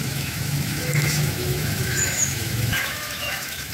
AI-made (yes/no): yes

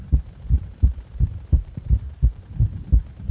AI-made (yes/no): yes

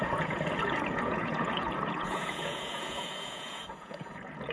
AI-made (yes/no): yes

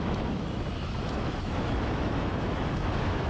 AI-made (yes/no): yes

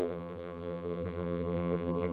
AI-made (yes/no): yes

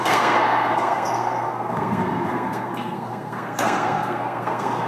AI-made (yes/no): yes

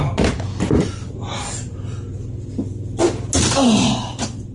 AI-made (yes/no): no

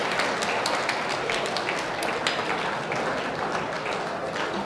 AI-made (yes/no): no